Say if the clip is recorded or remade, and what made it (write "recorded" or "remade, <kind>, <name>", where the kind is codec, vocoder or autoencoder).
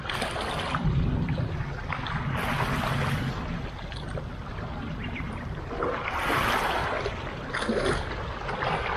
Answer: recorded